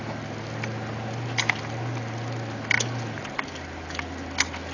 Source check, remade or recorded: recorded